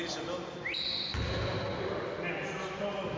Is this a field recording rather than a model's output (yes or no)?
yes